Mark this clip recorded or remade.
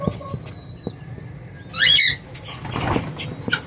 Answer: recorded